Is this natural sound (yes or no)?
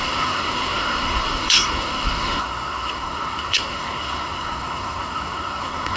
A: no